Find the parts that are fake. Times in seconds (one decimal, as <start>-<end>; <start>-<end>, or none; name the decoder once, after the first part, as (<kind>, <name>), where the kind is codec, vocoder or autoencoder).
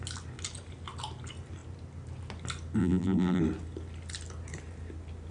2.8-3.4 (vocoder, BigVGAN v2)